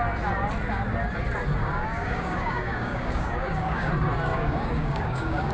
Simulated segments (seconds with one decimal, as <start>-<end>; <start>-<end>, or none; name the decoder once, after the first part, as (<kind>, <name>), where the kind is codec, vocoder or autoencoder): 1.6-3.9 (codec, DAC); 4.3-5.5